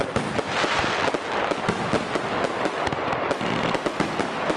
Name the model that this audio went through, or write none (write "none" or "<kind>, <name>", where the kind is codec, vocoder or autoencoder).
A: none